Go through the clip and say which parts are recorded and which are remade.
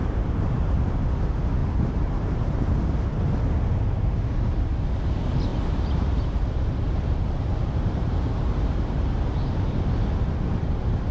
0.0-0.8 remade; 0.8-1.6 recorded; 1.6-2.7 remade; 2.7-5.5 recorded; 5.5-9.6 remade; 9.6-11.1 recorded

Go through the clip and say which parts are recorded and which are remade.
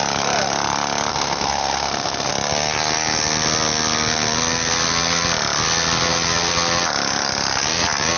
0.0-1.1 recorded; 1.1-2.3 remade; 2.3-8.2 recorded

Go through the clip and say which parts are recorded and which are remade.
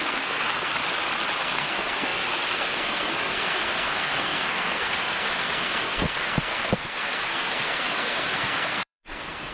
0.0-0.8 remade; 0.8-1.4 recorded; 1.4-9.5 remade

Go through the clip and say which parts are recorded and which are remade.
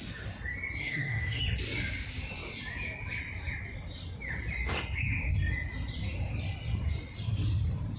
0.0-0.8 recorded; 0.8-1.4 remade; 1.4-8.0 recorded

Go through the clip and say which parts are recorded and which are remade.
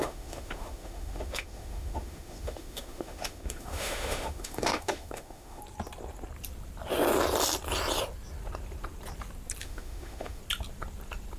0.0-5.6 remade; 5.6-9.6 recorded; 9.6-10.4 remade; 10.4-11.4 recorded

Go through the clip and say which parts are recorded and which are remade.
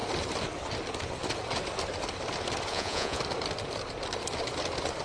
0.0-2.7 recorded; 2.7-3.2 remade; 3.2-5.0 recorded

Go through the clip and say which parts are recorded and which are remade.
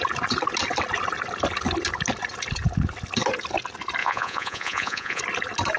0.0-4.0 recorded; 4.0-5.2 remade; 5.2-5.8 recorded